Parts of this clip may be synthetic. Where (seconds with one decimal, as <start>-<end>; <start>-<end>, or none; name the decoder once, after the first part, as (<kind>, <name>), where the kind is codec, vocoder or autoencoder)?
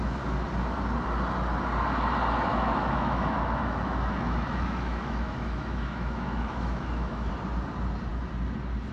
2.5-7.3 (autoencoder, DAC-VAE)